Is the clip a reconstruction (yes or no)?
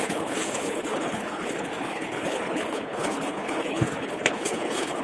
yes